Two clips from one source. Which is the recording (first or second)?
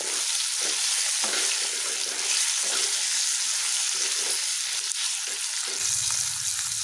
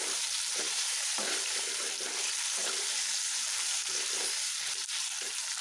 first